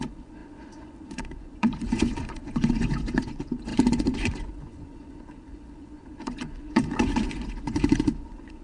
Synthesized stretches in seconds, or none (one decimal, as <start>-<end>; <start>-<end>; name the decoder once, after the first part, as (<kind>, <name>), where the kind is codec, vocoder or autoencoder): 0.0-8.6 (vocoder, Vocos)